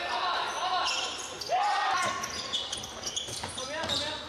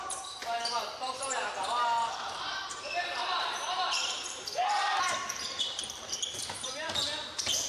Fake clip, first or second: second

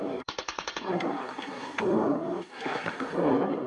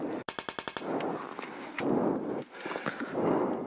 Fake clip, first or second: first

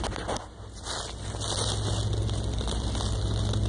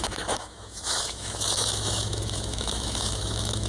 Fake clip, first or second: second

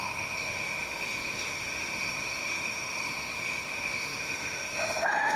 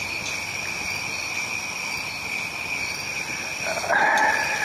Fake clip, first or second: first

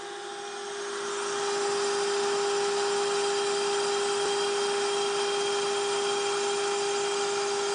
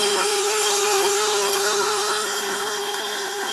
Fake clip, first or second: second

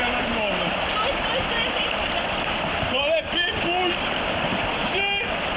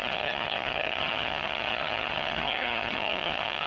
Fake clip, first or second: second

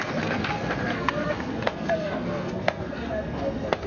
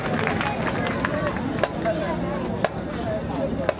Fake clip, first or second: first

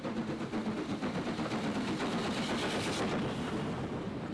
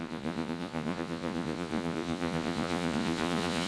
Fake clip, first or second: second